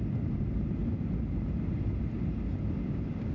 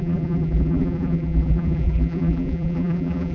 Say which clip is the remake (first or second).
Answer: second